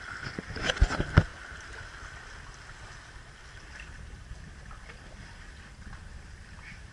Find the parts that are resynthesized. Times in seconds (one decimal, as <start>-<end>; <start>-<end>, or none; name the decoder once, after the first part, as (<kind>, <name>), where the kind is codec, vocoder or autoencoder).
none